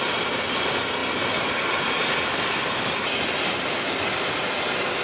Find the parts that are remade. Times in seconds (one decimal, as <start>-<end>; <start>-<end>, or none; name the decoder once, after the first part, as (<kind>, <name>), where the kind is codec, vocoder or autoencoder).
none

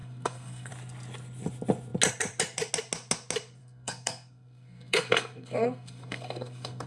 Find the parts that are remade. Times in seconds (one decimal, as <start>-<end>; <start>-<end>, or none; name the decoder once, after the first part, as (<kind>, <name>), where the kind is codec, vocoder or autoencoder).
0.0-0.7 (codec, SNAC); 3.6-6.9

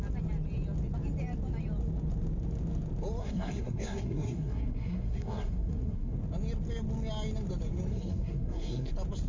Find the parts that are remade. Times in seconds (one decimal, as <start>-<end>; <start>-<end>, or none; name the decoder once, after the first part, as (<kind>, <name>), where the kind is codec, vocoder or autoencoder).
3.2-6.2 (codec, SNAC); 7.9-8.9

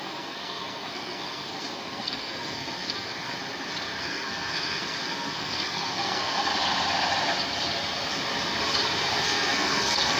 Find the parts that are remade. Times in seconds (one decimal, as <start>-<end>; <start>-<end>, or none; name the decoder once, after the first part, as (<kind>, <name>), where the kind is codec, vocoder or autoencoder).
0.0-3.4 (codec, SNAC); 4.0-6.5; 9.1-10.2

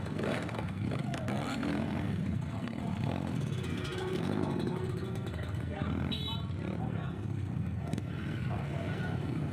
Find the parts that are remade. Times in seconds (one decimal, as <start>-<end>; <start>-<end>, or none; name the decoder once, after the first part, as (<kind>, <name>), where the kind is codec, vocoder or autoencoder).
0.0-6.2 (codec, SNAC); 6.8-9.5